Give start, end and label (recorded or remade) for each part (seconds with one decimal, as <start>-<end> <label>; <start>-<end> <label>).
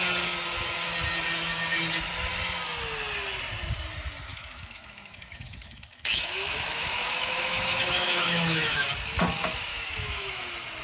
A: 0.0-4.3 recorded; 4.3-8.9 remade; 8.9-9.7 recorded; 9.7-10.4 remade; 10.4-10.8 recorded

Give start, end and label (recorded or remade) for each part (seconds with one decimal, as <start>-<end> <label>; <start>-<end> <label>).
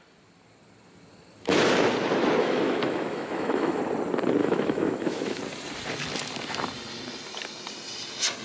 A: 0.0-2.4 recorded; 2.4-3.8 remade; 3.8-4.4 recorded; 4.4-5.4 remade; 5.4-8.4 recorded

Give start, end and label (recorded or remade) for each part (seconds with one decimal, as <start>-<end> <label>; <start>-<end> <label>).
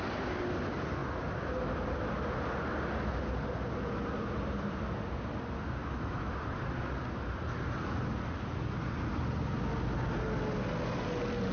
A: 0.0-5.8 recorded; 5.8-6.3 remade; 6.3-11.5 recorded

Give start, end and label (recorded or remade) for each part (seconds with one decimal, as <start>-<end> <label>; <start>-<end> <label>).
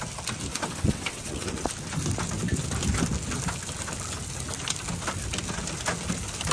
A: 0.0-0.5 recorded; 0.5-1.7 remade; 1.7-6.5 recorded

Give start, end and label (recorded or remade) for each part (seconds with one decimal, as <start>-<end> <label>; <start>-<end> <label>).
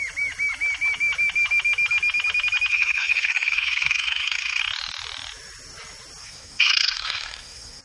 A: 0.0-2.7 recorded; 2.7-4.6 remade; 4.6-6.2 recorded; 6.2-7.8 remade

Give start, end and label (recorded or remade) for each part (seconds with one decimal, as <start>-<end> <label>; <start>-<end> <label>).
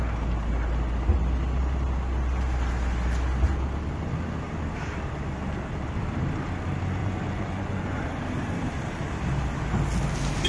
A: 0.0-7.0 recorded; 7.0-8.2 remade; 8.2-10.5 recorded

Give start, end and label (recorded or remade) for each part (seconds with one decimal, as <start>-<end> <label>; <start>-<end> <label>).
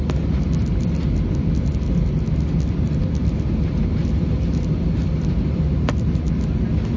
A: 0.0-7.0 recorded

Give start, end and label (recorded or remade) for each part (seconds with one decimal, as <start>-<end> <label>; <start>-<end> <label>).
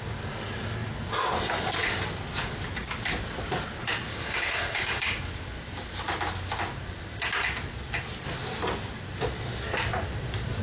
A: 0.0-4.1 recorded; 4.1-5.0 remade; 5.0-10.6 recorded